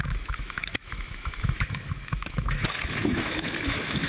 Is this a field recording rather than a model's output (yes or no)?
no